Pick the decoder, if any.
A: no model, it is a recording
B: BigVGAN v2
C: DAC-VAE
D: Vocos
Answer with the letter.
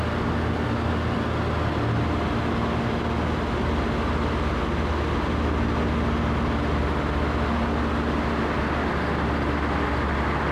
A